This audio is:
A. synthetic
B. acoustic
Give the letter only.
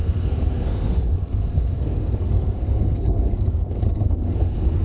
A